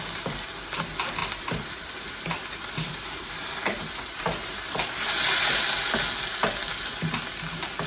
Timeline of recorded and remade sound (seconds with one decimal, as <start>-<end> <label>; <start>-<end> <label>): 0.0-1.2 recorded; 1.2-5.5 remade; 5.5-7.9 recorded